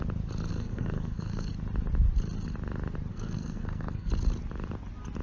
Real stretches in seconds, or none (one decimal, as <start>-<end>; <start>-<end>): 0.0-0.5; 1.5-3.1; 4.1-5.2